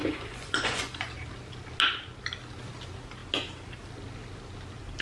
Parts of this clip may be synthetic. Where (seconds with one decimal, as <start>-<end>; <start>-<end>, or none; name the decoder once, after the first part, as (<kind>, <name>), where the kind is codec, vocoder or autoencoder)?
0.0-1.1 (vocoder, Vocos)